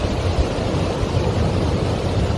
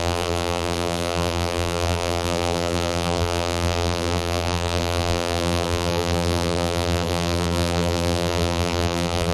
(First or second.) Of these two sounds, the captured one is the first